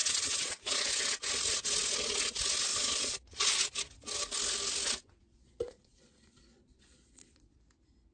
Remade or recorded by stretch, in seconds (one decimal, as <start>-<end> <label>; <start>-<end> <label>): 0.0-0.9 remade; 0.9-2.7 recorded; 2.7-3.4 remade; 3.4-5.0 recorded; 5.0-7.6 remade; 7.6-8.1 recorded